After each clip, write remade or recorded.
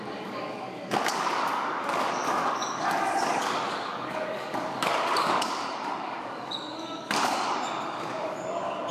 remade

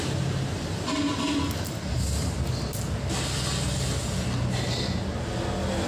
recorded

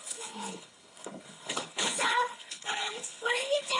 remade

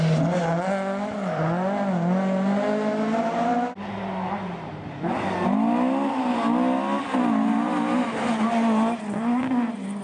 recorded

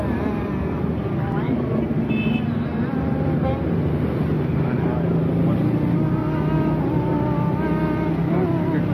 recorded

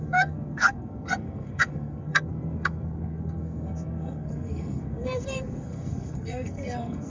remade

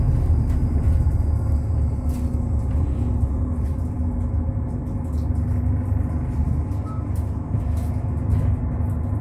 recorded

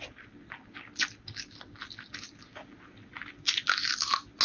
recorded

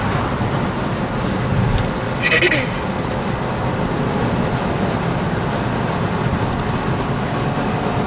recorded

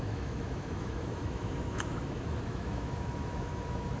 remade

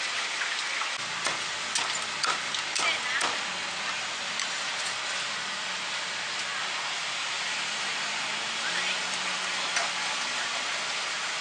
recorded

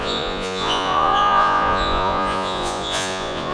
remade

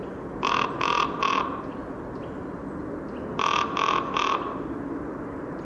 recorded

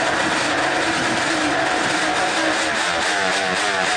remade